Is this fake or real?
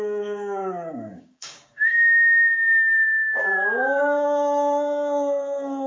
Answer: fake